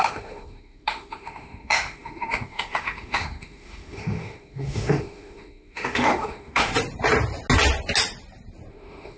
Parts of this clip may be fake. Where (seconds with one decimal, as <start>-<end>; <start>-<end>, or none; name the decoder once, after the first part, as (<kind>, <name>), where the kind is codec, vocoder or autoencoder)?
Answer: 0.0-6.7 (autoencoder, DAC-VAE); 8.7-9.2